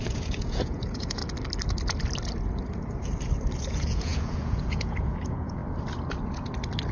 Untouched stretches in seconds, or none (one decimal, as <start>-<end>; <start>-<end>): 1.2-3.6; 5.6-6.9